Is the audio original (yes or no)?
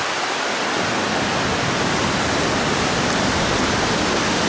yes